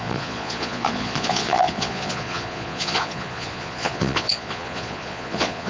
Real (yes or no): no